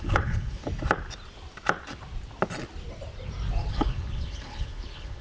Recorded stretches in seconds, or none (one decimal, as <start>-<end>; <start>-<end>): 0.6-3.7